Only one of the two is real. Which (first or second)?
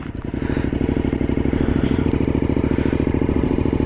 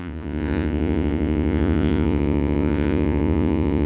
first